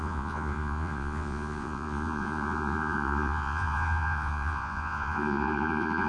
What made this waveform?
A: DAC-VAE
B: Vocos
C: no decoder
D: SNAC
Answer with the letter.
B